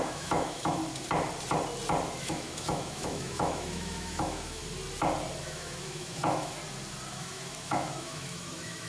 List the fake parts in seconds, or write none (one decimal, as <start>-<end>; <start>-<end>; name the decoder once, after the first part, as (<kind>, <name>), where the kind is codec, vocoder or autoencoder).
0.0-0.8 (autoencoder, DAC-VAE); 2.2-4.6; 5.4-6.6; 7.1-8.9